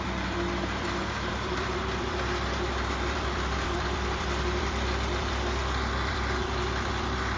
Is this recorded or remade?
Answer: remade